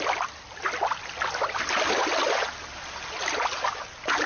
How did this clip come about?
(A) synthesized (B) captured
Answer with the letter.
B